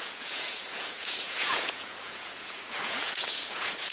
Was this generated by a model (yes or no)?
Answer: yes